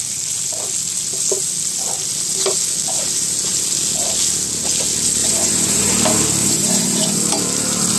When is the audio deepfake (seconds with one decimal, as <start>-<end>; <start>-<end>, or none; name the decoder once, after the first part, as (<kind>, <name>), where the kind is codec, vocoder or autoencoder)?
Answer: 5.2-5.9 (vocoder, Vocos); 6.4-7.2